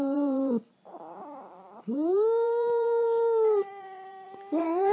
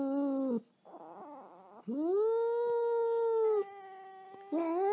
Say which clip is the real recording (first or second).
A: second